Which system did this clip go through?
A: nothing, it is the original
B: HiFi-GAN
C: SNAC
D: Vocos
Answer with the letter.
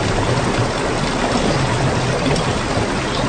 A